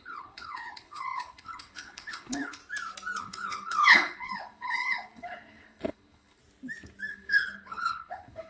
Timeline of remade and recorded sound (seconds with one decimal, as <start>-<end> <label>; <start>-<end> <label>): 0.0-2.6 remade; 2.6-3.2 recorded; 3.2-6.4 remade; 6.4-7.1 recorded; 7.1-8.5 remade